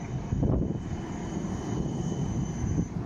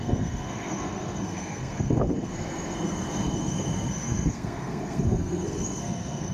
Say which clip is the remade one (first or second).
second